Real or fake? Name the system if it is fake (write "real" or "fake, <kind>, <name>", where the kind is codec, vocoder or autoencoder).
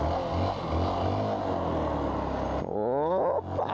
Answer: real